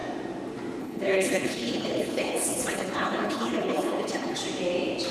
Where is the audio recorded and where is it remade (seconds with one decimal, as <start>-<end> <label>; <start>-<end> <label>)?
0.0-0.8 recorded; 0.8-4.4 remade; 4.4-5.1 recorded